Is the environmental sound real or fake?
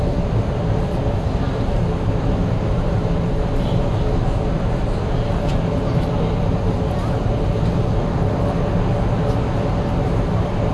real